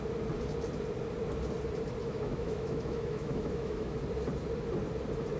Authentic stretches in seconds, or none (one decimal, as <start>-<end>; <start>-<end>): 0.0-2.0; 4.0-5.4